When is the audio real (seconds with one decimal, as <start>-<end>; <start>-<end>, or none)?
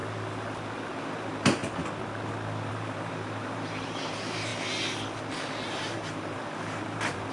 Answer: 0.0-0.9; 1.6-2.7; 4.5-5.3